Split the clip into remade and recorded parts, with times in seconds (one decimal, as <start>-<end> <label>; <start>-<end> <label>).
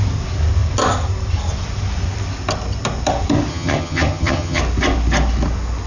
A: 0.0-3.5 recorded; 3.5-4.6 remade; 4.6-5.9 recorded